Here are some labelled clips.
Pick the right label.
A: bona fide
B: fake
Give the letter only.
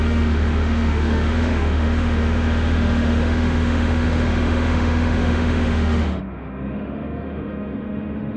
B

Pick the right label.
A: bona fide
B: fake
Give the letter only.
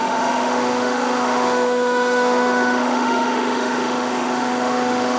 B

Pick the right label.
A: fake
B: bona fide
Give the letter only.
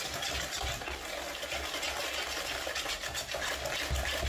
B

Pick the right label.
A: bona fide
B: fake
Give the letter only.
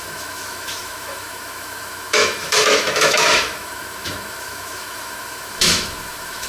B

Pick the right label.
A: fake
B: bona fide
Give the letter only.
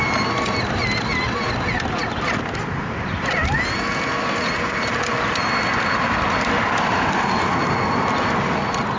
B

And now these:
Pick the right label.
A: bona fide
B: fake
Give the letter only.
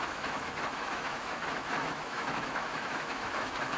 B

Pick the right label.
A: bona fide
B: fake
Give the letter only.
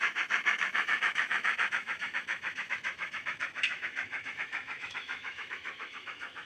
B